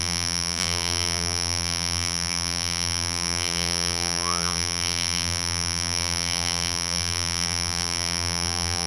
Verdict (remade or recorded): remade